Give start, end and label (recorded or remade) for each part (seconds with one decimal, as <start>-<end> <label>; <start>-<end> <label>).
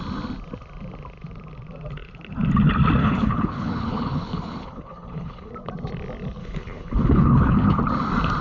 0.0-3.0 recorded; 3.0-5.5 remade; 5.5-6.4 recorded; 6.4-7.8 remade; 7.8-8.4 recorded